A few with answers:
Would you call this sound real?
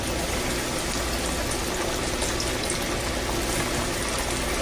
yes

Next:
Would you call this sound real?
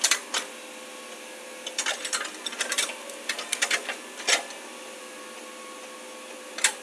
yes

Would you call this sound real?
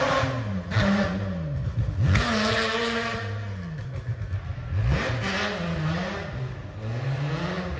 yes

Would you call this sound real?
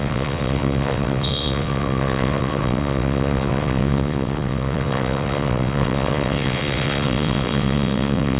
no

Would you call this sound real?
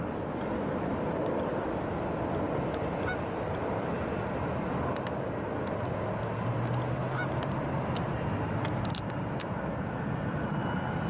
yes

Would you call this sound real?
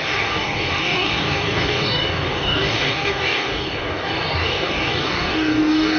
no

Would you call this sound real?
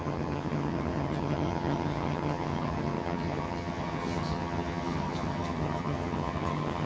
no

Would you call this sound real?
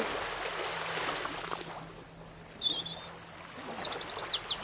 yes